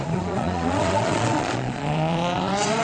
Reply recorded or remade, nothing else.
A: remade